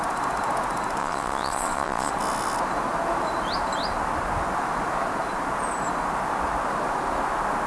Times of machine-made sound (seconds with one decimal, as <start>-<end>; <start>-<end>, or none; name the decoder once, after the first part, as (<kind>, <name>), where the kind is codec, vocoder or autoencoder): 1.0-2.1 (vocoder, WaveNeXt)